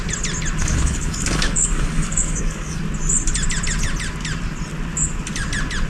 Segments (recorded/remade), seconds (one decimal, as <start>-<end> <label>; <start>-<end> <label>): 0.0-0.6 recorded; 0.6-2.8 remade; 2.8-5.9 recorded